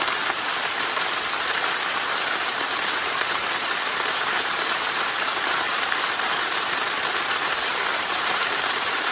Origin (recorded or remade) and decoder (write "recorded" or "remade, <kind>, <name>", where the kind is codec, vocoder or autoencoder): remade, vocoder, BigVGAN v2